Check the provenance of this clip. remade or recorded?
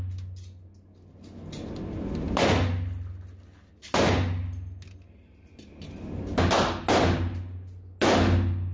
recorded